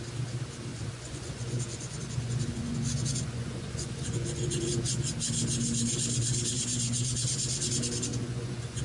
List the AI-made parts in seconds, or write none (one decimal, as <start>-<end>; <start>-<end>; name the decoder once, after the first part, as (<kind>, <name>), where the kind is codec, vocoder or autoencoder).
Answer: 0.7-5.1 (vocoder, Vocos); 6.5-7.1; 8.1-8.8